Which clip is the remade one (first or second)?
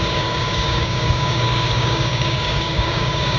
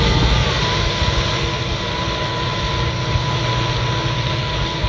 first